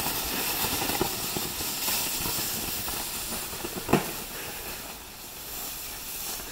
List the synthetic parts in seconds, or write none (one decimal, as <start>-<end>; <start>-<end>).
none